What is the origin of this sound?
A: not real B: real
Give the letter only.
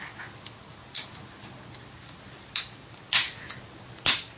B